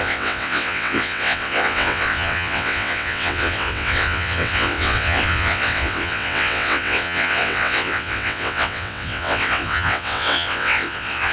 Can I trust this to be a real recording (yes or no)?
no